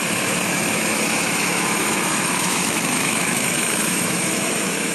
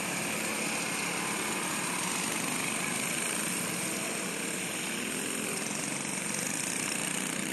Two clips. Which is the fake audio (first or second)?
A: first